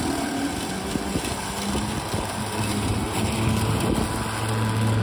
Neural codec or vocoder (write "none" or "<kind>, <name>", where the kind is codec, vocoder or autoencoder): none